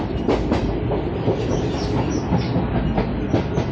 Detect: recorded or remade recorded